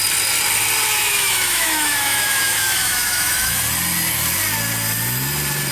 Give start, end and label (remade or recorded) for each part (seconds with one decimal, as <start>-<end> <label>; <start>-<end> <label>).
0.0-1.0 recorded; 1.0-3.6 remade; 3.6-5.7 recorded

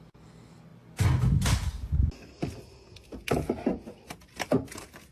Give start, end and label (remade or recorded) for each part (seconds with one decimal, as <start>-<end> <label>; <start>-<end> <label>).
0.0-5.1 recorded